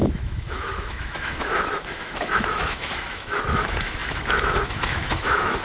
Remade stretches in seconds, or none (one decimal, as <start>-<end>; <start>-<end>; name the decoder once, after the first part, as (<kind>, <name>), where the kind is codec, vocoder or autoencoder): 0.0-5.6 (autoencoder, DAC-VAE)